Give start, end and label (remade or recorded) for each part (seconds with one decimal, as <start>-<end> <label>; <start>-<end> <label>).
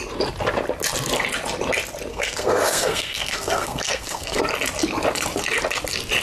0.0-2.1 recorded; 2.1-4.4 remade; 4.4-6.2 recorded